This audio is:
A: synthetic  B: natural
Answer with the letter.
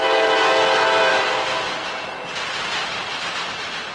B